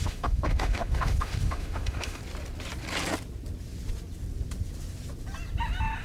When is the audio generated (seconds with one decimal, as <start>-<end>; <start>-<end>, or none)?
0.0-2.2